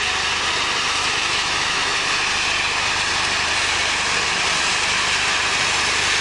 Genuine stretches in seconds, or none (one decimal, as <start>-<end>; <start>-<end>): 0.0-1.0; 2.0-6.2